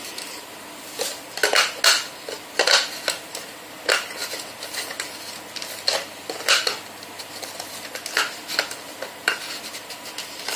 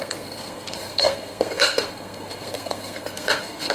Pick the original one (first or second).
first